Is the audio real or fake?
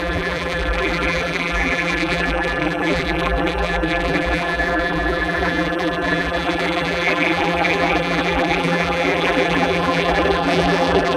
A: fake